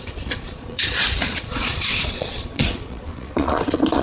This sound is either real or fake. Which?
fake